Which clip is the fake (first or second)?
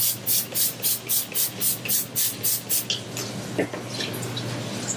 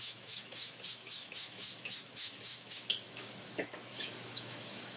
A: second